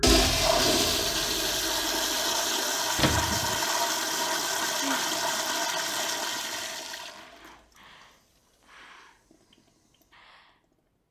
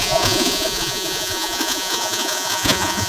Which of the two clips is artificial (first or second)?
second